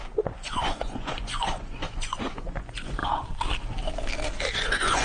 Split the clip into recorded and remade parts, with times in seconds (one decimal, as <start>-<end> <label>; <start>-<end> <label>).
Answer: 0.0-3.0 remade; 3.0-4.5 recorded; 4.5-5.0 remade